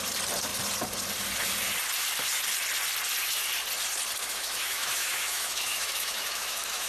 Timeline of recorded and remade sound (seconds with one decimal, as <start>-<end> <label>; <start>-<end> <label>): 0.0-4.2 recorded; 4.2-6.9 remade